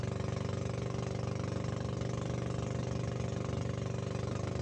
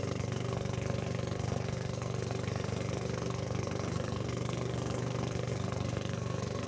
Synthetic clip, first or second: second